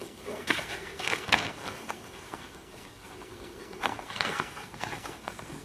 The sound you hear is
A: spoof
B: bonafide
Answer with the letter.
A